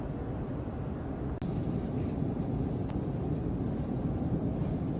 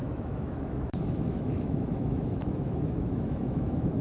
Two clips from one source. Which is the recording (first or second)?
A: first